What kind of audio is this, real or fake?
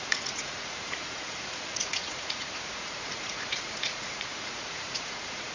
fake